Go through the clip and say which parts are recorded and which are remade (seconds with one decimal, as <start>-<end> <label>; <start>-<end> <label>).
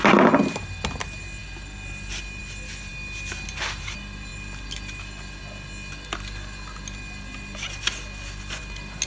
0.0-9.1 recorded